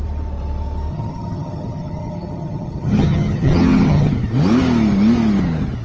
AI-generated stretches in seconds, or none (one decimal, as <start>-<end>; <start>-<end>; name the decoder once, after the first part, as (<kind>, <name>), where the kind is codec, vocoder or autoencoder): 0.9-4.1 (vocoder, HiFi-GAN)